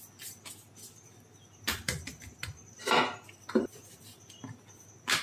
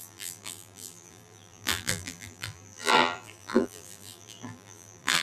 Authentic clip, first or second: first